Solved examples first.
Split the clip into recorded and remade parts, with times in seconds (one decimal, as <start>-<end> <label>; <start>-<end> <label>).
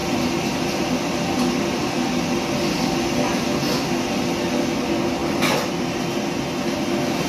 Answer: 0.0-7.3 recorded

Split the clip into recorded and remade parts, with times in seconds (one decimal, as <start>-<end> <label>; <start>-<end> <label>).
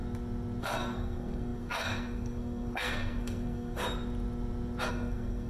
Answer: 0.0-0.6 recorded; 0.6-3.8 remade; 3.8-4.9 recorded; 4.9-5.5 remade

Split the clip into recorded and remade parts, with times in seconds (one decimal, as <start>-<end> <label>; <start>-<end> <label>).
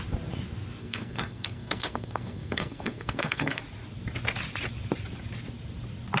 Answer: 0.0-0.8 recorded; 0.8-3.6 remade; 3.6-6.2 recorded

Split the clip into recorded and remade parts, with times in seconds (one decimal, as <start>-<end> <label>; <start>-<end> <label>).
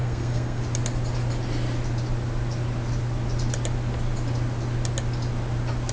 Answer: 0.0-0.6 remade; 0.6-5.9 recorded